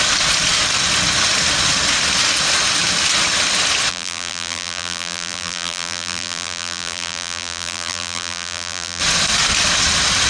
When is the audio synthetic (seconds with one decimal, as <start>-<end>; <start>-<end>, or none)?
3.9-9.0